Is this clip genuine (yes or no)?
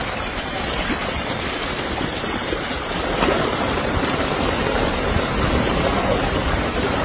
no